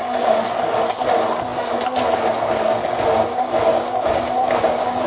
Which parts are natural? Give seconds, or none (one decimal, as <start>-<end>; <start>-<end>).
0.0-3.7